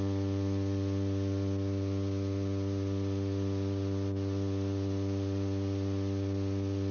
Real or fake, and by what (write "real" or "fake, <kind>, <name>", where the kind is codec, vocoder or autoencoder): real